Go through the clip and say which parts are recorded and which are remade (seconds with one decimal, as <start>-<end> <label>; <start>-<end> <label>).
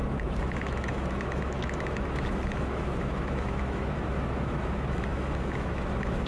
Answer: 0.0-6.3 remade